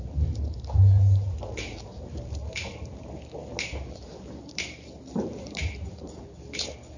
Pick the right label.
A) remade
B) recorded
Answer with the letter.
B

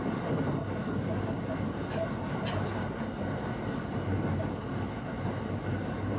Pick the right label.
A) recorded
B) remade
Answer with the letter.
A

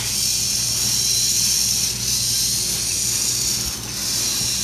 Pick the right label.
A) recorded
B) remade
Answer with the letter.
A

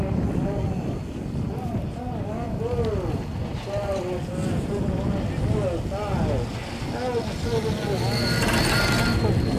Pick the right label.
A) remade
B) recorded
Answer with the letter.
B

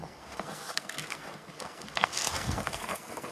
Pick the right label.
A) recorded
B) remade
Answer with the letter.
B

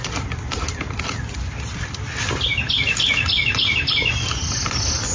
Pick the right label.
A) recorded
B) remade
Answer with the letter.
A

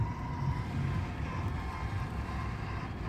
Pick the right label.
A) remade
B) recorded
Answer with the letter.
A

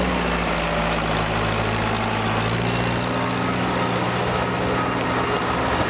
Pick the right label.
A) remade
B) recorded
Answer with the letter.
B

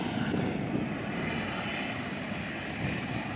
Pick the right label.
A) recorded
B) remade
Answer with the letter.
A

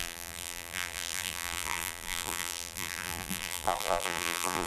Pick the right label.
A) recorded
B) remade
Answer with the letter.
B